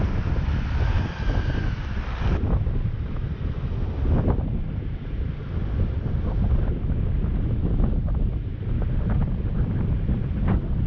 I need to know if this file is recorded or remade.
recorded